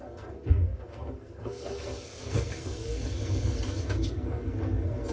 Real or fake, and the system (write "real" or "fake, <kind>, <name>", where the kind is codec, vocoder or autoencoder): fake, codec, SNAC